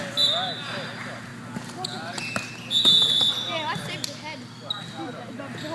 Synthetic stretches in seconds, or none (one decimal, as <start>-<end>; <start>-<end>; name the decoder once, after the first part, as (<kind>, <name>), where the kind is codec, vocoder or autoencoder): none